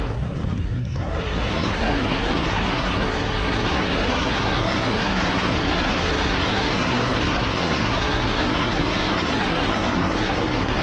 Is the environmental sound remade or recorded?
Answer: remade